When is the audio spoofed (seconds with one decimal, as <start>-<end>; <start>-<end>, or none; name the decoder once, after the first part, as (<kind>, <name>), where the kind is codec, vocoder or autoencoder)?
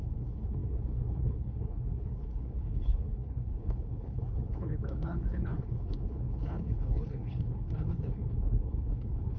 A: 0.0-9.4 (codec, HILCodec)